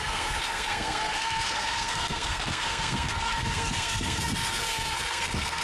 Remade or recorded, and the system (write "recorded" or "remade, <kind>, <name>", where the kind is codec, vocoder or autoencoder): remade, codec, SNAC